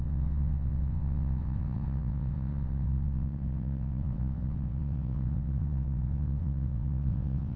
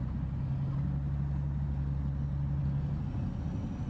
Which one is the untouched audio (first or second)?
second